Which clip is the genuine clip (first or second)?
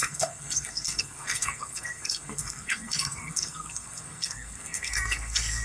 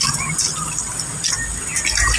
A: second